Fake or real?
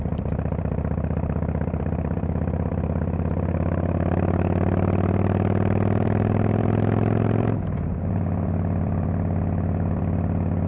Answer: fake